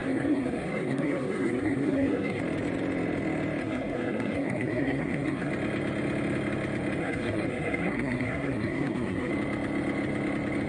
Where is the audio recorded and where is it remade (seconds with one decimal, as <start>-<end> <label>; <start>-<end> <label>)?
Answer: 0.0-2.4 remade; 2.4-3.6 recorded; 3.6-5.5 remade; 5.5-7.0 recorded; 7.0-9.3 remade; 9.3-10.7 recorded